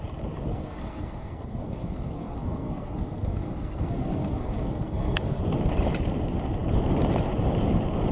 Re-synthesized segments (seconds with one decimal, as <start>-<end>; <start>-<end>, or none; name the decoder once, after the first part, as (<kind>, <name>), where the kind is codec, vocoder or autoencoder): 0.5-5.4 (codec, SNAC)